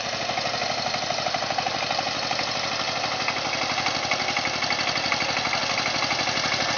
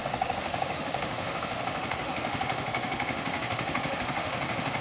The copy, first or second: second